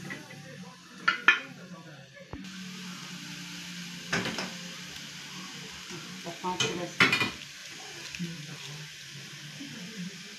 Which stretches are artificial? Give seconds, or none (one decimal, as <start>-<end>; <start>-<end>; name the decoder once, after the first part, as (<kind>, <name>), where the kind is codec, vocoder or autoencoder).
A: none